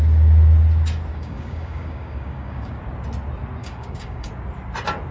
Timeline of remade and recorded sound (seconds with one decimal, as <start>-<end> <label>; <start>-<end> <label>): 0.0-1.1 recorded; 1.1-2.8 remade; 2.8-3.6 recorded; 3.6-4.3 remade; 4.3-5.1 recorded